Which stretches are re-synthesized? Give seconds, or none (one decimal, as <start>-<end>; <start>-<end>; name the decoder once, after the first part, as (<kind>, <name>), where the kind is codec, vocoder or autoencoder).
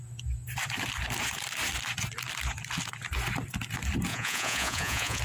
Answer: 4.1-5.2 (vocoder, Vocos)